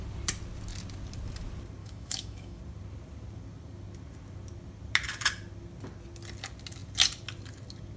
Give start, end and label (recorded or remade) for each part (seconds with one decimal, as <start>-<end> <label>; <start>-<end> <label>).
0.0-1.8 recorded; 1.8-2.6 remade; 2.6-8.0 recorded